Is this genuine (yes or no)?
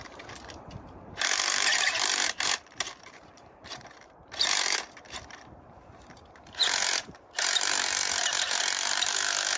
no